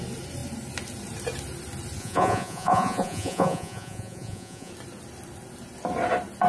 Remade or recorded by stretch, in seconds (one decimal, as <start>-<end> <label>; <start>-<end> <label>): 0.0-2.0 recorded; 2.0-4.7 remade; 4.7-6.5 recorded